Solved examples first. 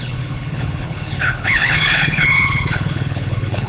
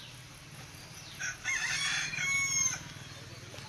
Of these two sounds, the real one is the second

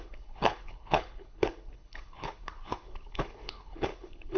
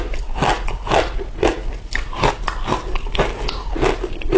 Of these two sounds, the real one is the second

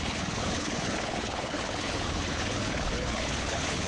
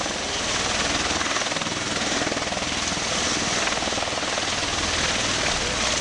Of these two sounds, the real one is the second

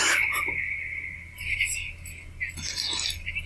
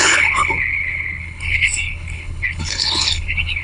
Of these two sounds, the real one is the first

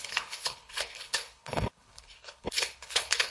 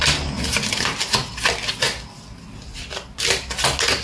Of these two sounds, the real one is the second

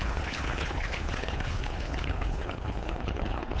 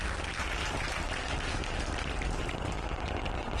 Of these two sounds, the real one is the second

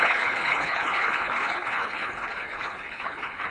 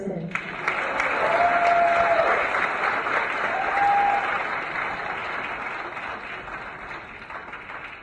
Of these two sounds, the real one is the second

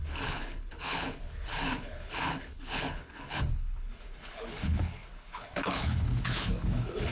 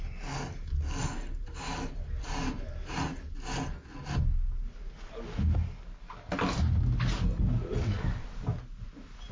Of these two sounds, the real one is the second